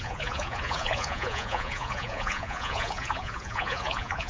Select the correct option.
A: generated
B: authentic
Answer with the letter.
A